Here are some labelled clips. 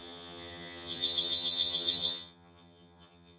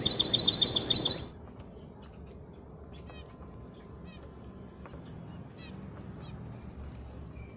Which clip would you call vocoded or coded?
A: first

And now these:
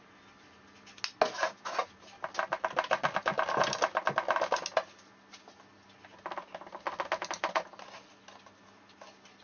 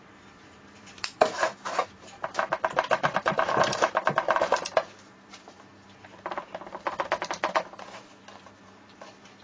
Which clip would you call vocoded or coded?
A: second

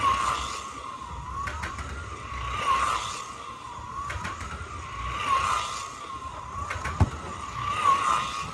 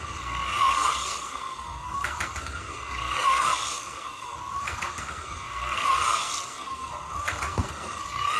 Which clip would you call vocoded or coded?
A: second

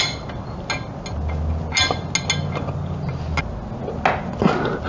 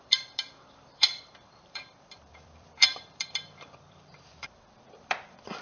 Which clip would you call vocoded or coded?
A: second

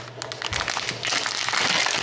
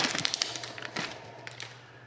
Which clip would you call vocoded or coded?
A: second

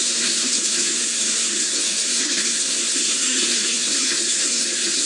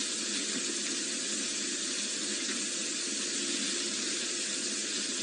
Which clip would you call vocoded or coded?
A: first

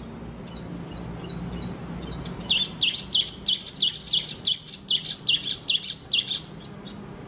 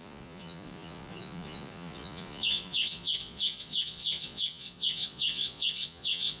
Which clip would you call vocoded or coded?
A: second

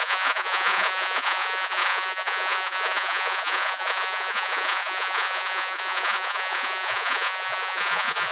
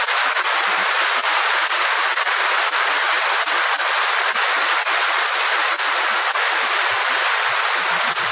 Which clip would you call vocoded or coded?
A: first